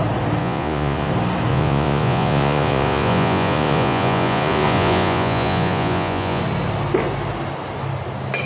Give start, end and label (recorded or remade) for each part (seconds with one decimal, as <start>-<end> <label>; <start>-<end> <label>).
0.0-0.4 recorded; 0.4-1.1 remade; 1.1-1.5 recorded; 1.5-6.4 remade; 6.4-8.5 recorded